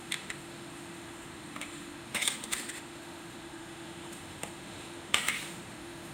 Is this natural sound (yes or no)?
no